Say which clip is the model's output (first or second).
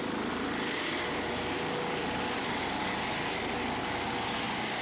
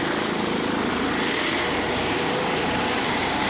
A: second